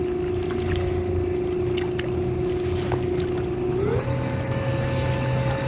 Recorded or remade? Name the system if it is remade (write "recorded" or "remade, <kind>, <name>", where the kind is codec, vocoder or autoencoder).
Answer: recorded